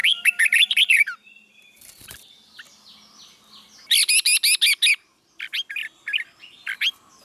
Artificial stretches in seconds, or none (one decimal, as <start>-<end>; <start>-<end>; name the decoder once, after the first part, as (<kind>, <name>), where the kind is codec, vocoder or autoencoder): 0.0-2.1 (vocoder, BigVGAN v2)